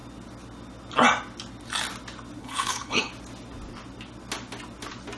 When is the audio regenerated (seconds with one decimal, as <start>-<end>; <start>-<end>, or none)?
2.4-3.1